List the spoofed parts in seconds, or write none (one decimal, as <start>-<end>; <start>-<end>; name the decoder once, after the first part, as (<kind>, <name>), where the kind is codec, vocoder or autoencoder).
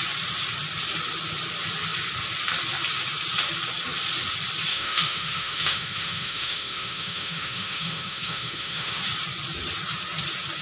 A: 4.7-9.0 (autoencoder, DAC-VAE)